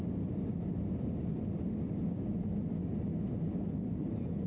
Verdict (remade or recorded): recorded